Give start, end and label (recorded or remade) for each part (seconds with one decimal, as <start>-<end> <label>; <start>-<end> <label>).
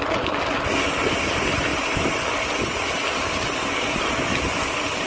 0.0-5.1 recorded